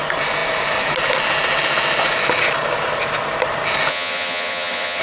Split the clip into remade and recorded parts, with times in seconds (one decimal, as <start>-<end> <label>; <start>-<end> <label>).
0.0-3.9 recorded; 3.9-5.0 remade